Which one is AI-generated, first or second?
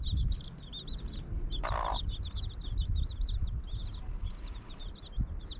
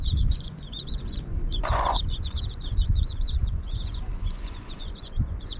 second